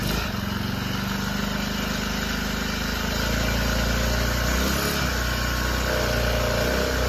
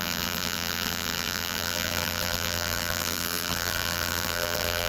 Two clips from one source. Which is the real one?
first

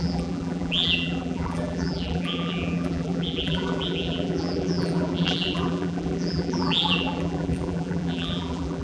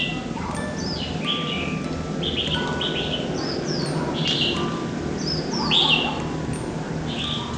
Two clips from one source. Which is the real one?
second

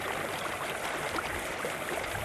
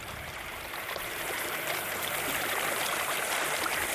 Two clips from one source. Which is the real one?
second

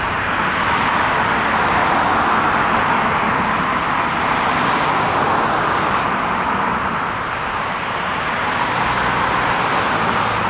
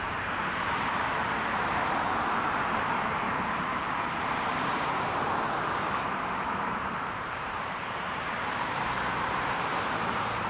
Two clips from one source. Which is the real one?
first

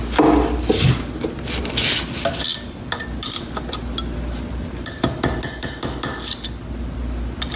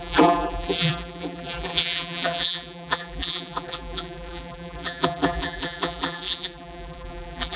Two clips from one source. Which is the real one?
first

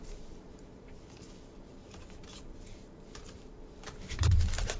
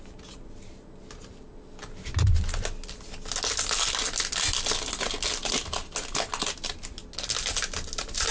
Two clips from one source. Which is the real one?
second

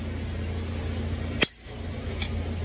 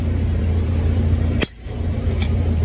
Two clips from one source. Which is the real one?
first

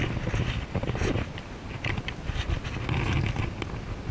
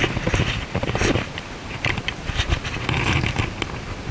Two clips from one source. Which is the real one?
first